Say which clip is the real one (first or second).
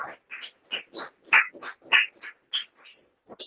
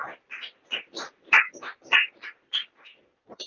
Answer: first